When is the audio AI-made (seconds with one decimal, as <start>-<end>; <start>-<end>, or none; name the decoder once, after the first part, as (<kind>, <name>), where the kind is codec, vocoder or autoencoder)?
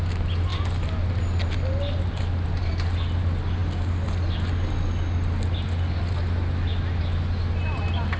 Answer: none